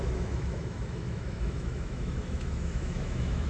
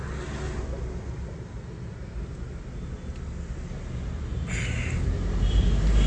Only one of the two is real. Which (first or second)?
second